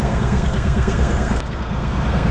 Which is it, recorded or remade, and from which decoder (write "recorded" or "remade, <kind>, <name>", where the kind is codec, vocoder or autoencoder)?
remade, codec, SNAC